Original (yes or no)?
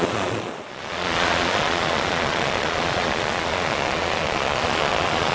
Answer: no